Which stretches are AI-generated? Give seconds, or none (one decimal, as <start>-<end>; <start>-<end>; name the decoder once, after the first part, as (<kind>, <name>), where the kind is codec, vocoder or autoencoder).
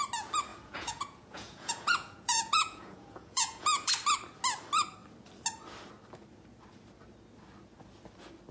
0.5-3.9 (vocoder, Vocos)